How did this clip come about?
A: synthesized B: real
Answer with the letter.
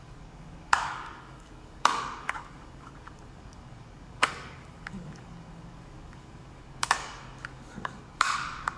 A